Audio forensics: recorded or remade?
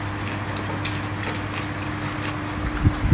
recorded